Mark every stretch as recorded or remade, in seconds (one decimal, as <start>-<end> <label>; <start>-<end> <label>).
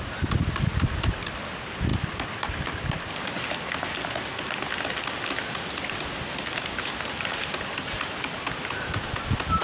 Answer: 0.0-9.6 recorded